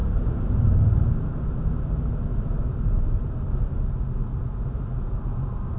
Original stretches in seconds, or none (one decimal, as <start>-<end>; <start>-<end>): 3.5-5.8